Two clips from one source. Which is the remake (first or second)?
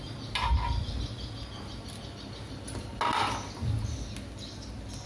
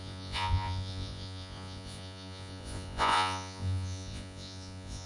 second